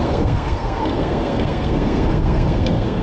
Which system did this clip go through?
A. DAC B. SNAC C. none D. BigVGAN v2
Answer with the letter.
B